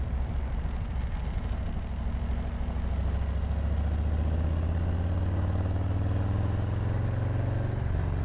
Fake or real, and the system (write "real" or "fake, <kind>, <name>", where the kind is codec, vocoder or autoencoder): real